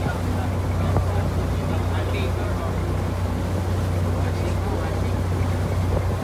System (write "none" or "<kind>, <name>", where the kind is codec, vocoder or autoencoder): none